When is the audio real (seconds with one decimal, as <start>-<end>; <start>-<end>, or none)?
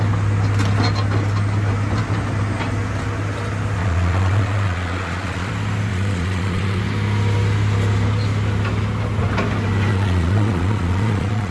0.0-3.8; 5.5-5.9; 6.8-9.9